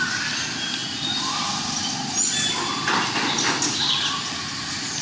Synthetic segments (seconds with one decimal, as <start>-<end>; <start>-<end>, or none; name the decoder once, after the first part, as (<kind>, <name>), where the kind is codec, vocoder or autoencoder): none